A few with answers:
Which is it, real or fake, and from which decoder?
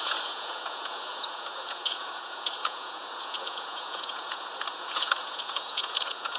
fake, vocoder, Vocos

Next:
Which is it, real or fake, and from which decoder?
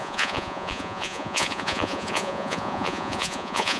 fake, vocoder, Vocos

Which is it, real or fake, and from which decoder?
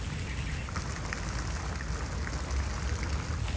real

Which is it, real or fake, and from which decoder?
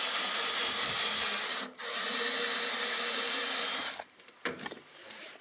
fake, vocoder, BigVGAN v2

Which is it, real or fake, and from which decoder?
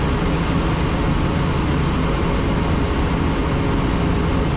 real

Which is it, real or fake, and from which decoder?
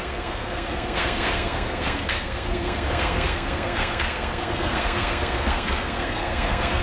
fake, codec, SNAC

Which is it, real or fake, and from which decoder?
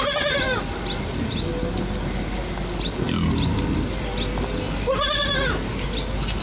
real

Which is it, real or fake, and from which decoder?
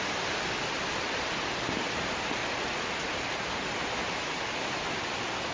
real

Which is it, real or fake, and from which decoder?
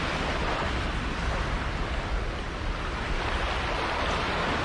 real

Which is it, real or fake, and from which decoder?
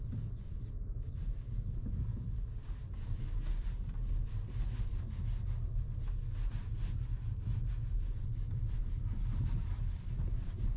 real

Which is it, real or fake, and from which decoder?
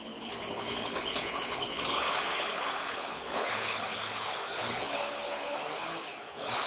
fake, codec, HILCodec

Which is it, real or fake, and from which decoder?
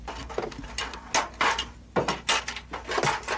real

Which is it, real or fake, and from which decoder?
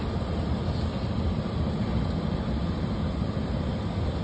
real